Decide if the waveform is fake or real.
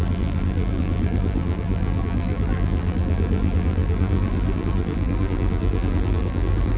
fake